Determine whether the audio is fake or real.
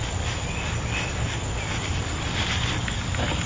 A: real